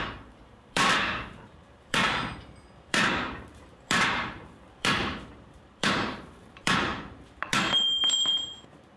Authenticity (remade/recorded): remade